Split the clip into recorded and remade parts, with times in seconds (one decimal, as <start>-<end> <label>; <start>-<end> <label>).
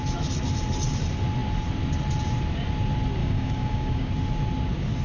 0.0-3.2 recorded; 3.2-4.1 remade; 4.1-5.0 recorded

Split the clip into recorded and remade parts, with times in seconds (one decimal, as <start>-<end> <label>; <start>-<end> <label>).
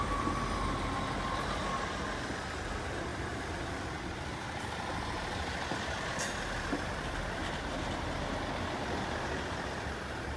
0.0-3.1 recorded; 3.1-7.6 remade; 7.6-10.4 recorded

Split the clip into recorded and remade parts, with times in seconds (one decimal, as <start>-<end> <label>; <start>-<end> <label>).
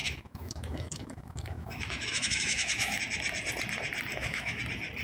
0.0-3.0 remade; 3.0-4.1 recorded; 4.1-4.6 remade; 4.6-5.0 recorded